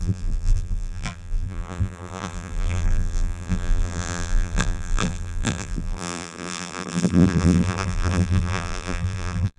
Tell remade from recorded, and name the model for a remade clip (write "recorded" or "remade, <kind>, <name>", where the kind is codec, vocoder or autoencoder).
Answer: remade, vocoder, BigVGAN v2